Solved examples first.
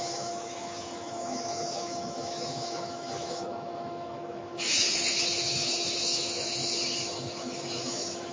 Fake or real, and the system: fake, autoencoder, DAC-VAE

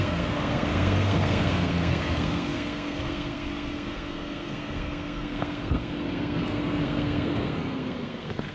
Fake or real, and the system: fake, codec, SNAC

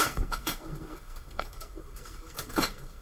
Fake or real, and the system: fake, codec, SNAC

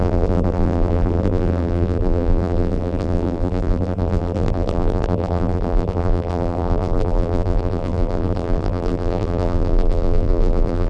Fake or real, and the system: fake, vocoder, BigVGAN v2